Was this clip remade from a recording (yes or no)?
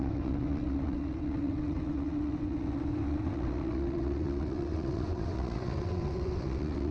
yes